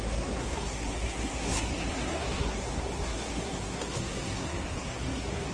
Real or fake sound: fake